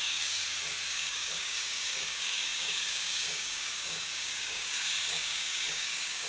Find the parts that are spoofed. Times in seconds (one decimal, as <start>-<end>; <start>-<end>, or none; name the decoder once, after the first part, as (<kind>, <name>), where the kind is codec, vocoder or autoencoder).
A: 0.0-0.4 (codec, DAC); 0.9-6.3